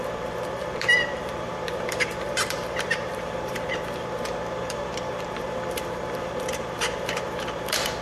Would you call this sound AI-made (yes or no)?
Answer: yes